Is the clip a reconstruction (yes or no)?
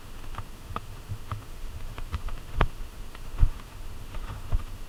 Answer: yes